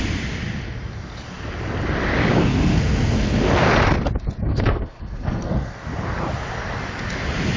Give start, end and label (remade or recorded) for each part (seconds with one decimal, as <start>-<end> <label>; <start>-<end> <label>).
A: 0.0-2.4 recorded; 2.4-3.4 remade; 3.4-4.4 recorded; 4.4-5.8 remade; 5.8-7.6 recorded